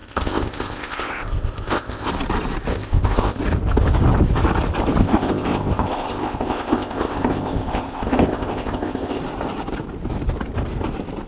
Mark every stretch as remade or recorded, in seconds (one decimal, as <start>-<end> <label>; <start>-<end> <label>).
0.0-2.1 remade; 2.1-2.7 recorded; 2.7-3.4 remade; 3.4-5.0 recorded; 5.0-9.2 remade; 9.2-11.3 recorded

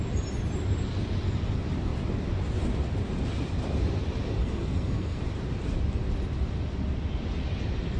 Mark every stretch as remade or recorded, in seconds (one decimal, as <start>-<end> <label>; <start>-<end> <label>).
0.0-4.4 recorded; 4.4-5.2 remade; 5.2-8.0 recorded